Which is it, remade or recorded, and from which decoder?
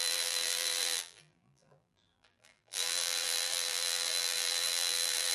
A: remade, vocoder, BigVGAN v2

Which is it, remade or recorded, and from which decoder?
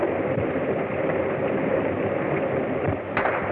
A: remade, vocoder, BigVGAN v2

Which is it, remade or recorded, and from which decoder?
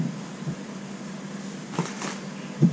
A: recorded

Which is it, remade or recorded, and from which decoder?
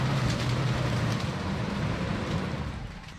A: remade, vocoder, BigVGAN v2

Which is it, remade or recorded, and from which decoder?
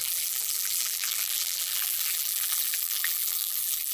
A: remade, vocoder, BigVGAN v2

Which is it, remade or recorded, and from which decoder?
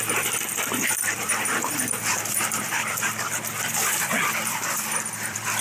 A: remade, vocoder, BigVGAN v2